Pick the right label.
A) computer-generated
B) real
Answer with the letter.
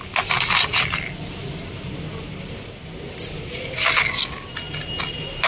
B